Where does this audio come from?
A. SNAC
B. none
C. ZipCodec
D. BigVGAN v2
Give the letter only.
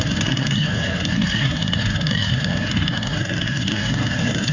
A